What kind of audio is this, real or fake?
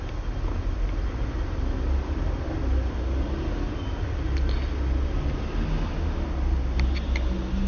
real